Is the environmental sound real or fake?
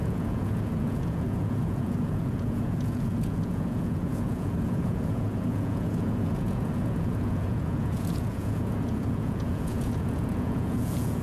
fake